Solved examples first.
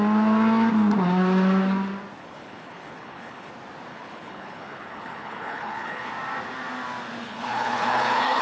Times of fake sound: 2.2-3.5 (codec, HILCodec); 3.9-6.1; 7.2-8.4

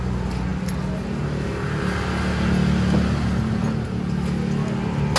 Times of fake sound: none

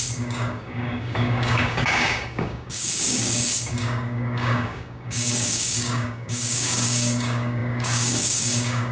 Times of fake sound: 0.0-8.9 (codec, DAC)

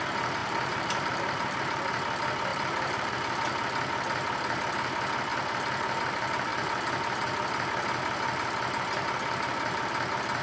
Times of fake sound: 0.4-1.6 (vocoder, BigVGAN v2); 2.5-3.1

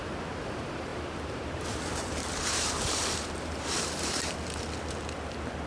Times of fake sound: 0.9-4.3 (vocoder, BigVGAN v2)

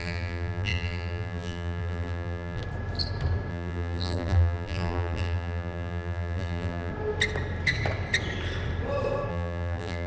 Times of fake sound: 0.0-2.6 (vocoder, BigVGAN v2); 3.5-6.9; 9.3-10.1

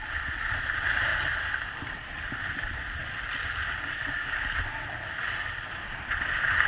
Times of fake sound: none

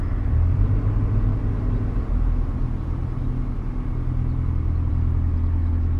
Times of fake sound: none